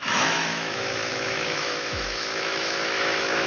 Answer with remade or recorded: remade